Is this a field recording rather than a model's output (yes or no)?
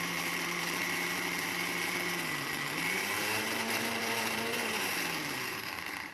no